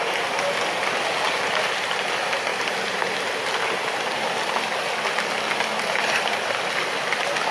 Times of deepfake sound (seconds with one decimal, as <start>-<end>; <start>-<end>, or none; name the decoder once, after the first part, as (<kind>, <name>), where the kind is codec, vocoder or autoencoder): none

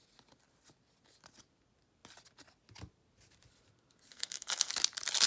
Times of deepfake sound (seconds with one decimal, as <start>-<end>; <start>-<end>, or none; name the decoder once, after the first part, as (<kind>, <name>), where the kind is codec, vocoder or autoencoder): 4.1-4.7 (codec, SNAC)

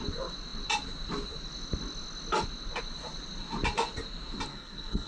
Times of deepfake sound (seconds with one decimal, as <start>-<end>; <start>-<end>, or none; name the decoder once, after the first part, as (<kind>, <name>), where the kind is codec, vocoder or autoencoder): 4.5-5.1 (codec, SNAC)

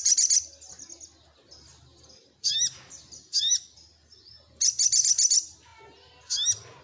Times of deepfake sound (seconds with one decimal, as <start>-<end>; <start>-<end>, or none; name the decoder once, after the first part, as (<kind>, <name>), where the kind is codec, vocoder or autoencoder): none

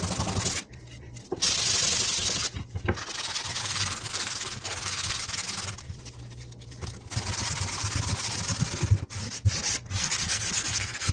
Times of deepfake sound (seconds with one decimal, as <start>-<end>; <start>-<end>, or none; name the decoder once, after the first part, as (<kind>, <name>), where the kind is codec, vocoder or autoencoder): 3.6-5.2 (codec, SNAC); 10.0-11.1